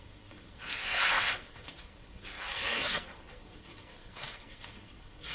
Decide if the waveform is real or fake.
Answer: fake